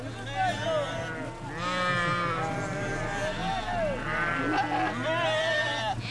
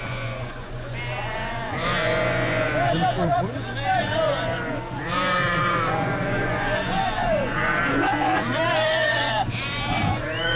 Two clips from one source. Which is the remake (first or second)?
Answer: second